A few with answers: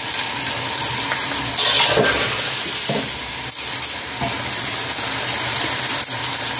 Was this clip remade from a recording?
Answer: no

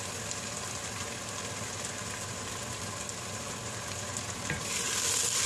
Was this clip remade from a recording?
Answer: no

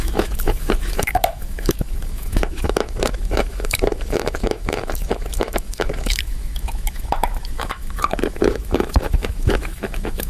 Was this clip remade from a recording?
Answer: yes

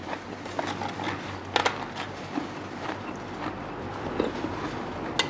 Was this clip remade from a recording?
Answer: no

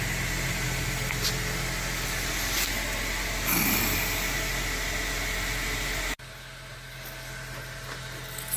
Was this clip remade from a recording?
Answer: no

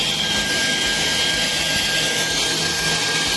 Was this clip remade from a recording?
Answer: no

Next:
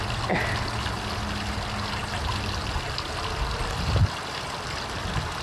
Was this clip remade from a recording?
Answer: no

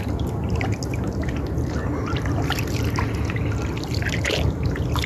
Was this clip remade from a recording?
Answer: no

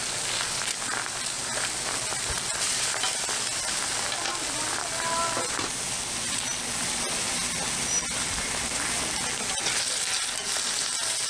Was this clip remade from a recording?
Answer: no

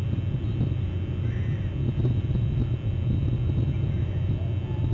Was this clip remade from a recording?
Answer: no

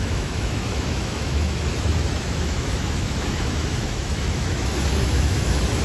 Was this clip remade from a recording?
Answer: yes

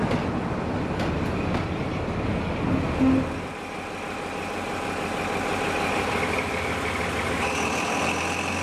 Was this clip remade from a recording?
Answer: no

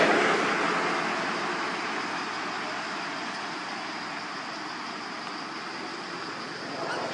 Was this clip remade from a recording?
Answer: no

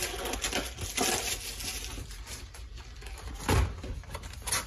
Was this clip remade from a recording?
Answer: no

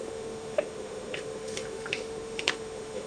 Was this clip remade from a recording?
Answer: yes